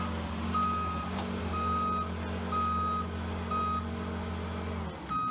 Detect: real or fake real